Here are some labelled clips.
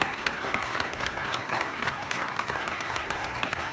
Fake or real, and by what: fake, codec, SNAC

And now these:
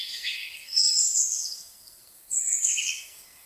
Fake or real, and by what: fake, codec, SNAC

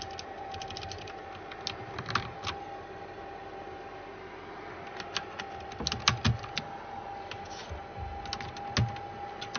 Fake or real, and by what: real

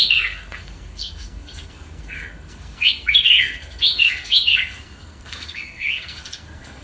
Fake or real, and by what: fake, codec, SNAC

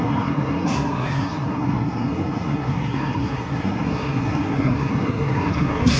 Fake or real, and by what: fake, codec, SNAC